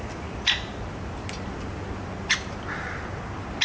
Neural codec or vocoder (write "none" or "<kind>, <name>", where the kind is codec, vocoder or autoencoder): none